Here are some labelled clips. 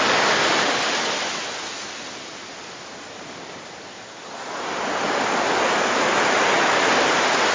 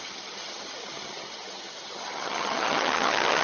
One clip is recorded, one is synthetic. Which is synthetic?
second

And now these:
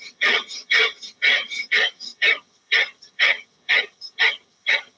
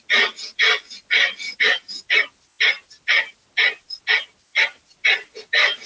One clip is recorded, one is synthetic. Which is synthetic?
first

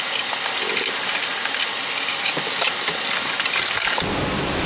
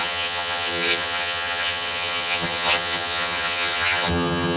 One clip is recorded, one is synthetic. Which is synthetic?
second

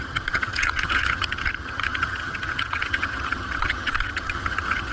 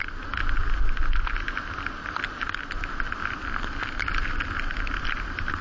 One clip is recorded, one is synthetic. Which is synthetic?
first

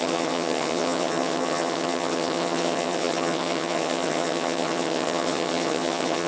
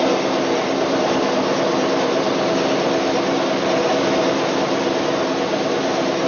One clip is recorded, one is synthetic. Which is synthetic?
first